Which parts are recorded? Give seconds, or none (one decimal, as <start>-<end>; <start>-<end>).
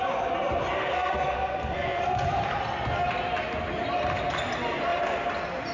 0.0-0.8; 2.0-5.7